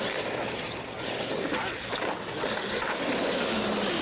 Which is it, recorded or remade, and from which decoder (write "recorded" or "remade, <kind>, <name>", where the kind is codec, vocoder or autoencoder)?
recorded